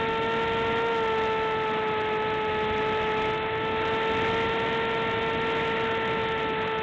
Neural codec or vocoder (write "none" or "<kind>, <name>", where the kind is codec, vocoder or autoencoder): none